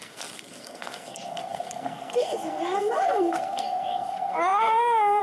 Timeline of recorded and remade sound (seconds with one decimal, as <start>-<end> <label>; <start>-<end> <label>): 0.0-5.2 remade